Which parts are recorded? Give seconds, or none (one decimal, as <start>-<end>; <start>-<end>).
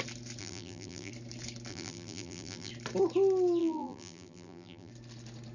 0.0-0.4; 1.1-1.7; 2.7-3.6; 4.9-5.5